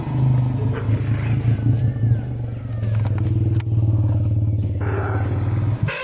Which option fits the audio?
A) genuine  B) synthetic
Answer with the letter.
A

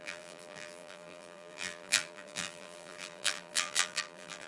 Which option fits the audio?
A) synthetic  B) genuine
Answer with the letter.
A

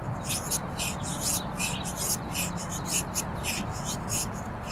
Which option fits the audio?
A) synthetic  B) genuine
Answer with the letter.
B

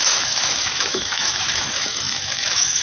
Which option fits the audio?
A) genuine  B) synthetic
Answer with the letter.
B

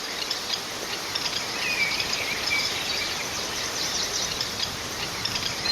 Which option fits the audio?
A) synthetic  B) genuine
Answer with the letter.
A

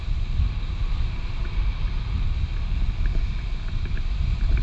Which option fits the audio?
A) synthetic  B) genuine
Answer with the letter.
B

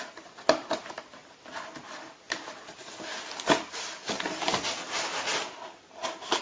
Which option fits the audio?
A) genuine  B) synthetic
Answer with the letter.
A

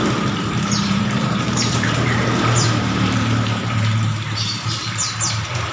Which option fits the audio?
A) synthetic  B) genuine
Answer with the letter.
A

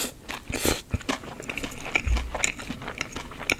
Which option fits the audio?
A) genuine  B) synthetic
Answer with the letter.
A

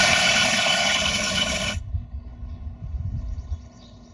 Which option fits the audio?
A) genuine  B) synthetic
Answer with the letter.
B